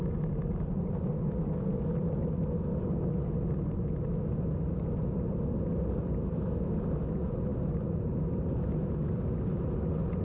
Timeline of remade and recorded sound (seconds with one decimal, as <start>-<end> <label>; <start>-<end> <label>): 0.0-10.2 recorded